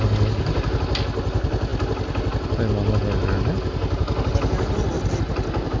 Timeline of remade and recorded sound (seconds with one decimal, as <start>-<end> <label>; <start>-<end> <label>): 0.0-5.8 recorded